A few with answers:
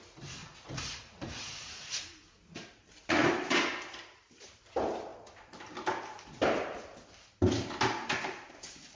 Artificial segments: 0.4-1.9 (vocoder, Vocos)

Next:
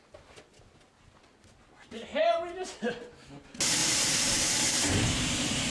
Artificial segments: 2.1-2.9 (vocoder, BigVGAN v2); 3.8-5.7

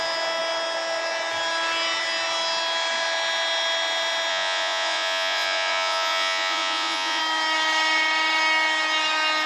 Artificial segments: 4.3-7.2 (vocoder, Vocos)

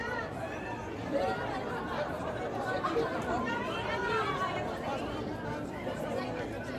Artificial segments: 0.0-4.1 (vocoder, BigVGAN v2); 4.9-6.8

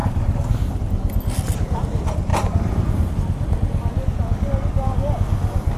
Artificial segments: 0.0-0.7 (vocoder, BigVGAN v2); 2.3-3.1